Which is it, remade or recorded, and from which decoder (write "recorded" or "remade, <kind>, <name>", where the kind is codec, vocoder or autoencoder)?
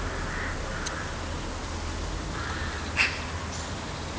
recorded